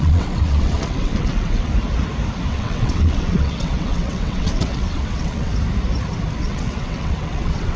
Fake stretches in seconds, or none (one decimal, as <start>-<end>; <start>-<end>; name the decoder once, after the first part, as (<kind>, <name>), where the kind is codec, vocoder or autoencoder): 0.0-1.7 (vocoder, WaveNeXt); 2.5-5.5; 6.4-7.8